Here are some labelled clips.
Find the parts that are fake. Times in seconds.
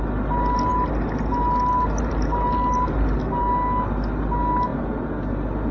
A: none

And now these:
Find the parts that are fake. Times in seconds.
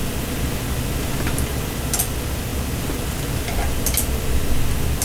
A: none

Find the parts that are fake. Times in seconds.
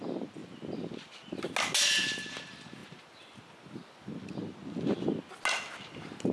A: none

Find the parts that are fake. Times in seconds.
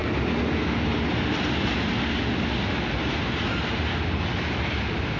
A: none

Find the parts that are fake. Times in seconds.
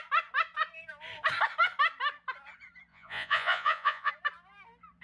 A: 2.9-4.1 (vocoder, Vocos)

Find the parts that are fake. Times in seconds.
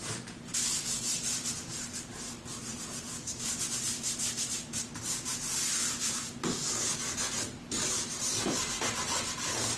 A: none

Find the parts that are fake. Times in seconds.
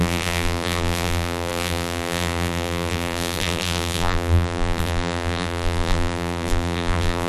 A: 0.0-7.3 (vocoder, BigVGAN v2)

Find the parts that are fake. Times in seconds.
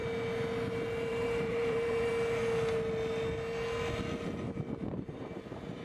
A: 1.1-2.1 (vocoder, BigVGAN v2); 4.9-5.8